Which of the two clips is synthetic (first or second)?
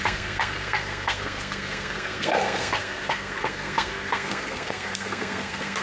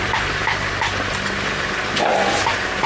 first